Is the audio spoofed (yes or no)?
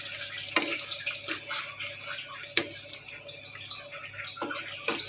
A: no